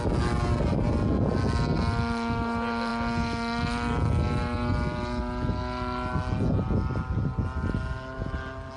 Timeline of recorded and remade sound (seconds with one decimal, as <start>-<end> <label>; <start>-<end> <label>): 0.0-8.8 recorded